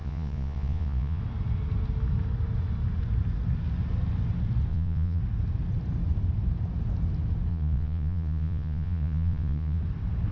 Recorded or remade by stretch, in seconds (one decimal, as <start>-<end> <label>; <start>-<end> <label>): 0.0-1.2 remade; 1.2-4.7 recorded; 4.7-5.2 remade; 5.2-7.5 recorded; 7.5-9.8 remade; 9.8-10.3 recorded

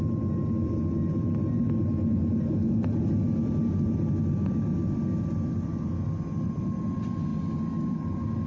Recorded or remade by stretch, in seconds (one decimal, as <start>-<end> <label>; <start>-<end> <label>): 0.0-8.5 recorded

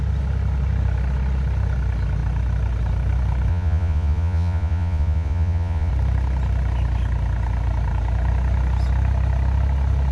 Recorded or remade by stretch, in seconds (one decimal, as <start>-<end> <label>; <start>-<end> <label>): 0.0-3.5 recorded; 3.5-5.9 remade; 5.9-10.1 recorded

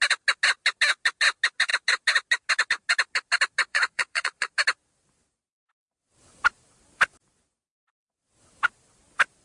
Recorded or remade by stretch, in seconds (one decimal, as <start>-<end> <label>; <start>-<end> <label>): 0.0-3.6 recorded; 3.6-4.5 remade; 4.5-9.4 recorded

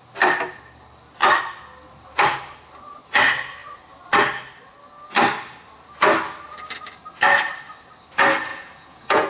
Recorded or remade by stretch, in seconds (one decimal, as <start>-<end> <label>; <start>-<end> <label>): 0.0-8.5 recorded; 8.5-9.3 remade

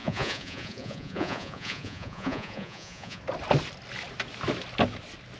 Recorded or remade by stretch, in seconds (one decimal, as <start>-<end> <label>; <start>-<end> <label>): 0.0-3.2 remade; 3.2-5.4 recorded

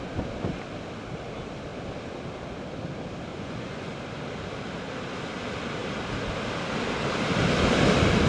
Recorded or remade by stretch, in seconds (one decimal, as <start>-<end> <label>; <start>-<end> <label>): 0.0-3.3 recorded; 3.3-3.9 remade; 3.9-8.3 recorded

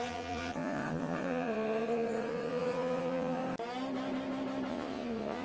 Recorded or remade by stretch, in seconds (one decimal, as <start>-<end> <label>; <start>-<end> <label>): 0.0-3.4 remade; 3.4-4.7 recorded; 4.7-5.4 remade